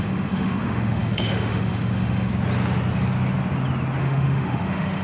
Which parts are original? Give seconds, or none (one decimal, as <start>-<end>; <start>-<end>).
2.3-4.0